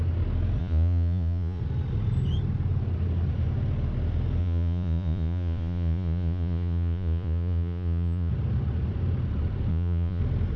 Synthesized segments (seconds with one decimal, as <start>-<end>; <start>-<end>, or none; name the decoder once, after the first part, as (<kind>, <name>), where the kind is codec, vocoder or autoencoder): 0.6-1.6 (vocoder, Vocos); 4.4-8.3; 9.7-10.2